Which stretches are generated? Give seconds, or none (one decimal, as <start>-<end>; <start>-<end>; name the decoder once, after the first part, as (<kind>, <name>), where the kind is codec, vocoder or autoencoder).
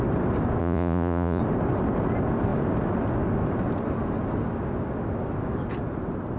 0.6-1.4 (vocoder, Vocos)